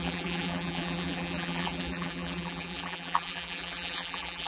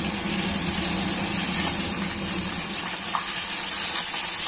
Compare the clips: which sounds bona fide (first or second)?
second